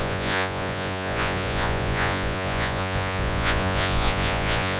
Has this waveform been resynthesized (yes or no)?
yes